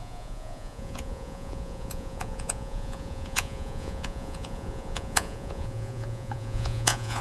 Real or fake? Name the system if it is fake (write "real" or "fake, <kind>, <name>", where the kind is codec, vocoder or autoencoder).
fake, vocoder, Vocos